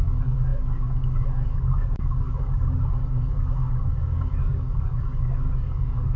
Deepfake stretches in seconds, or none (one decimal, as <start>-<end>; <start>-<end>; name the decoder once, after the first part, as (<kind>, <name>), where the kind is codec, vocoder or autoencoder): 0.0-2.6 (codec, DAC); 3.3-6.2